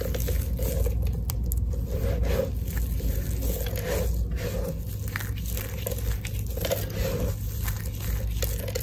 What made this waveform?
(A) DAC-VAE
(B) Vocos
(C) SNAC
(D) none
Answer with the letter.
D